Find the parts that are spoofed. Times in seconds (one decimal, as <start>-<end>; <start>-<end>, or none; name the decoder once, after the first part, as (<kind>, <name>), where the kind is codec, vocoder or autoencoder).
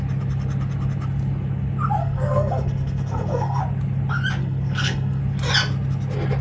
2.0-3.6 (codec, SNAC); 4.4-5.2